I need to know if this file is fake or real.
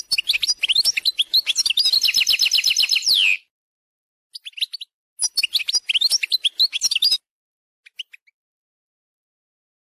real